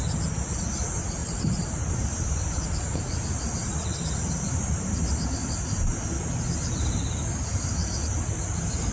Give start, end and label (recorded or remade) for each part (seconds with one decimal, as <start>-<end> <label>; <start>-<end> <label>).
0.0-1.2 recorded; 1.2-2.6 remade; 2.6-8.9 recorded